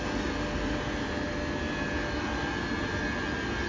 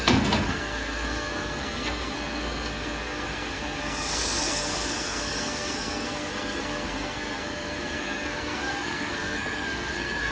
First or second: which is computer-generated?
second